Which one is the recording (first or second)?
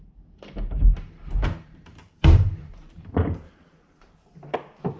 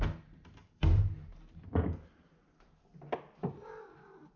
second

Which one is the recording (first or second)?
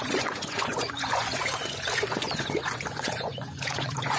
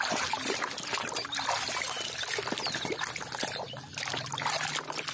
second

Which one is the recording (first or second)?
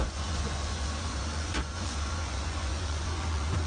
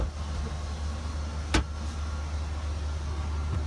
second